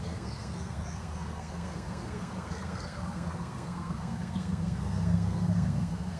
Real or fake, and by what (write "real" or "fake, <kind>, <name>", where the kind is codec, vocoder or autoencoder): fake, codec, SNAC